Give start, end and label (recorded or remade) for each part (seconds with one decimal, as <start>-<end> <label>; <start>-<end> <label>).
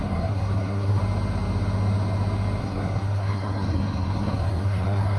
0.0-1.0 remade; 1.0-2.6 recorded; 2.6-5.2 remade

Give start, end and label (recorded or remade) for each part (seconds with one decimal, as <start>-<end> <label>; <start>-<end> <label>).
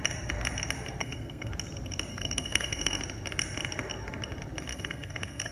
0.0-1.0 recorded; 1.0-1.5 remade; 1.5-2.1 recorded; 2.1-3.0 remade; 3.0-4.7 recorded; 4.7-5.5 remade